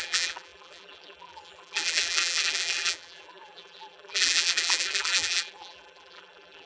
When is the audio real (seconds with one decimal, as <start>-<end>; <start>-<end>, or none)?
none